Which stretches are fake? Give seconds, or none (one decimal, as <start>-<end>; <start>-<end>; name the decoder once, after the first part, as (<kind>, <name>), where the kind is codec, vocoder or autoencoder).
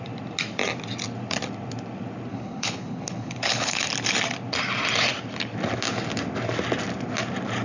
2.3-3.9 (codec, HILCodec)